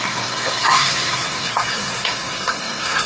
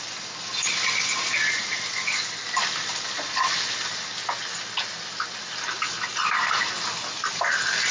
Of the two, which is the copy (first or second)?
first